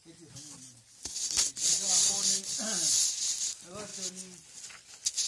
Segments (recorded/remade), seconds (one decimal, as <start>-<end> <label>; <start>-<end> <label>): 0.0-5.3 recorded